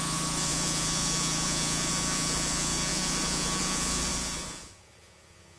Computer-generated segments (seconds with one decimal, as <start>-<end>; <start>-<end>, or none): 0.0-5.6